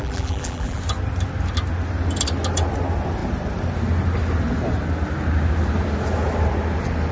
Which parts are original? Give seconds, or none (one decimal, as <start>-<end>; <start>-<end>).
0.8-7.1